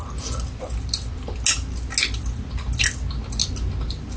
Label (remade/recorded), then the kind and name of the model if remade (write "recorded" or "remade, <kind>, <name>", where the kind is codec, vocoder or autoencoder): recorded